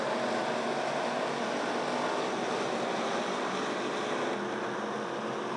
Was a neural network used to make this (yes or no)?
no